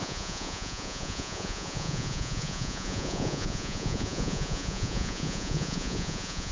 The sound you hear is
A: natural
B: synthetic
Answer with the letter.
B